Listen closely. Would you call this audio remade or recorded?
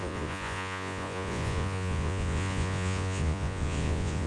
remade